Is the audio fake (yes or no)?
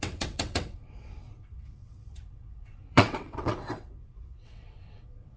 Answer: yes